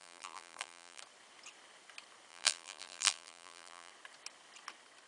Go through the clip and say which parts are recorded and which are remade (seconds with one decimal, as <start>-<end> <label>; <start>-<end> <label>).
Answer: 0.0-1.0 remade; 1.0-2.3 recorded; 2.3-3.9 remade; 3.9-5.1 recorded